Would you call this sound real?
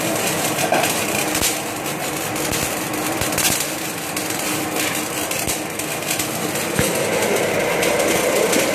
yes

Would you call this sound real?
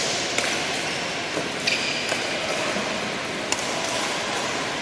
yes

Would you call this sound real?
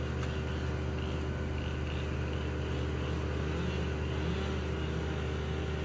yes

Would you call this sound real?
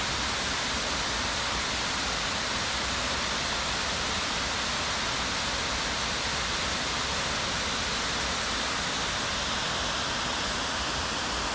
yes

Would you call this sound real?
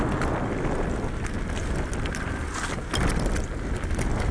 yes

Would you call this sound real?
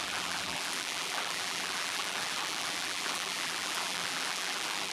no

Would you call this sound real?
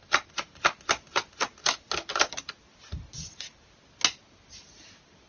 yes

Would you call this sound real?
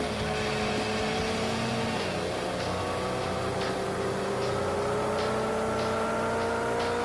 yes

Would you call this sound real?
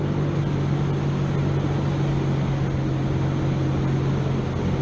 yes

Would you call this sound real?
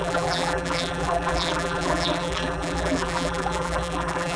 no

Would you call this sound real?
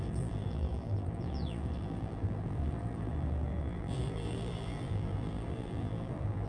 no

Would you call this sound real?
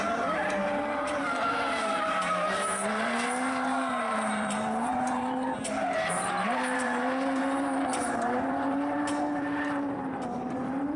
no